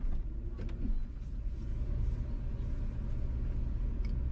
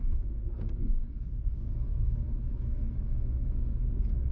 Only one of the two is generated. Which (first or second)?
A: second